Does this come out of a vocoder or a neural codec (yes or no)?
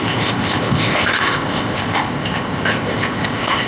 yes